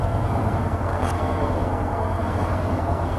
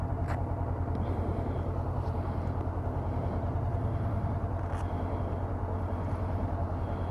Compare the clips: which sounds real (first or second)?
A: second